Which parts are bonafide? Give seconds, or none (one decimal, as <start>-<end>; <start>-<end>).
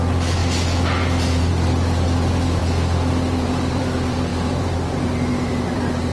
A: 0.4-1.5; 2.6-3.4